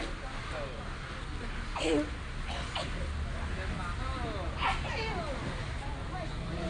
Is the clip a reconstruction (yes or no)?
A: no